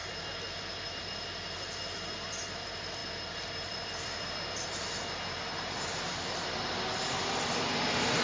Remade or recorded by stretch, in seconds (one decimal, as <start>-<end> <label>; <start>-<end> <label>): 0.0-8.2 recorded